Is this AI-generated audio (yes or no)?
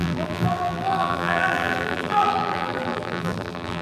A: yes